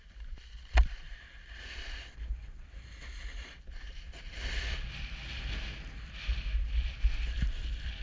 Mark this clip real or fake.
real